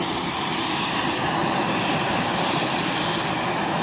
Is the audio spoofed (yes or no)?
no